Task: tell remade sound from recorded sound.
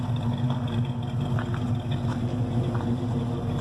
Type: recorded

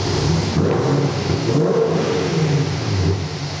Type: recorded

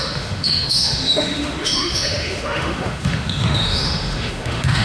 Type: remade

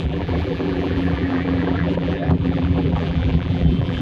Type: remade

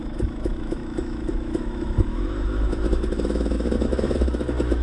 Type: remade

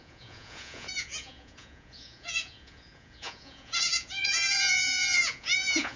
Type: remade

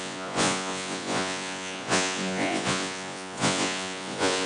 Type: remade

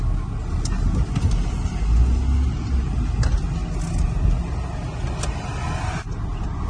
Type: recorded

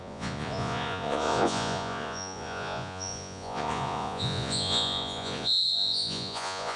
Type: remade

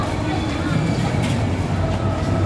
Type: remade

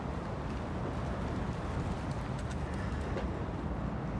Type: recorded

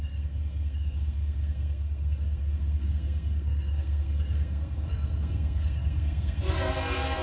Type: remade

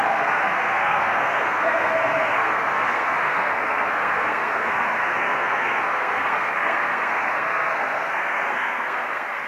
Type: remade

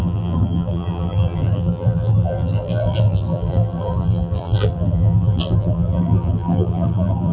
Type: remade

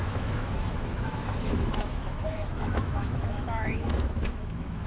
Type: remade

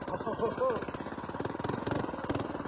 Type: recorded